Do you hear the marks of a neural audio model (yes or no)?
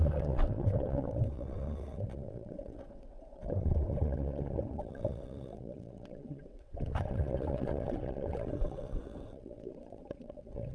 yes